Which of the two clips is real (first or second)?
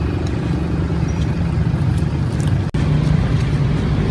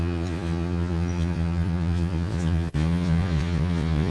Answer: first